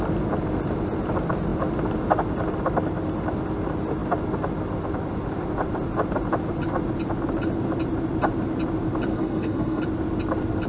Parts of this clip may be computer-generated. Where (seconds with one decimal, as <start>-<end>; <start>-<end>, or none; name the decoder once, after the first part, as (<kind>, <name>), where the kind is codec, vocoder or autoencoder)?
9.1-9.8 (codec, SNAC)